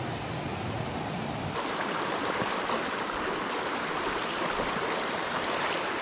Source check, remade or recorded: recorded